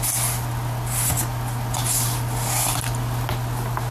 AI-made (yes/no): no